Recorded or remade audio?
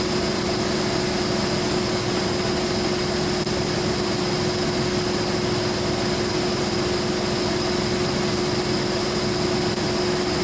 recorded